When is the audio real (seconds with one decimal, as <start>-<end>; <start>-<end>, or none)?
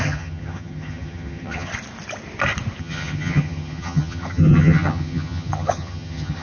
1.7-2.8